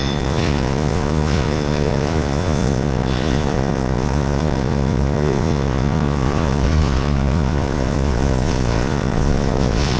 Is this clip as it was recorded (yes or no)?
no